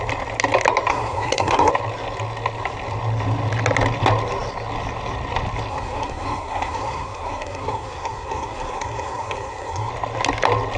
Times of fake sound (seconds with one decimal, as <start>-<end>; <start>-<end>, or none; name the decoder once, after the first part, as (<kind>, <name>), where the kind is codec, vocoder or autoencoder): 0.9-1.7 (codec, SNAC); 5.7-9.9